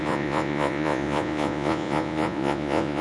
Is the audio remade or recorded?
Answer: remade